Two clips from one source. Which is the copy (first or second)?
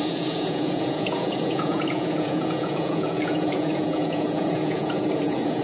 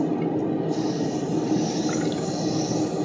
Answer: first